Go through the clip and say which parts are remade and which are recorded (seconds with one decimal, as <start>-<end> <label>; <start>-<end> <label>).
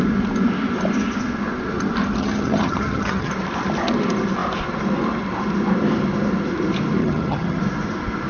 0.0-2.2 recorded; 2.2-3.3 remade; 3.3-7.0 recorded; 7.0-7.6 remade; 7.6-8.3 recorded